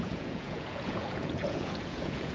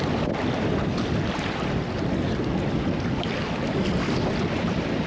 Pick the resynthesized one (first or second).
first